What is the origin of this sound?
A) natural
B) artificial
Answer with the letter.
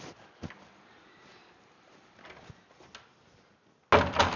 A